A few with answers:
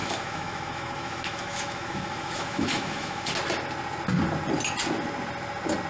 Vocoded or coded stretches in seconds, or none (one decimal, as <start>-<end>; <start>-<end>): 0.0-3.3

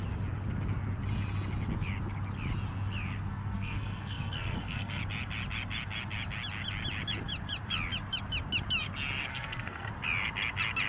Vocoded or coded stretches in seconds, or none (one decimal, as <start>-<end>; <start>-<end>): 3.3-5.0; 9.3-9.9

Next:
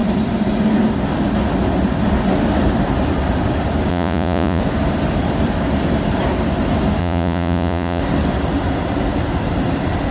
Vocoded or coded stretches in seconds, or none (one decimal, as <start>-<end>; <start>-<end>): 3.9-4.6; 7.0-8.0